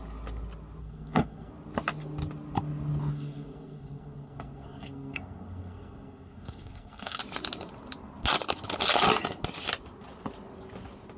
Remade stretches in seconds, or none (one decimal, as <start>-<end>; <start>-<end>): 0.8-1.5; 3.1-7.2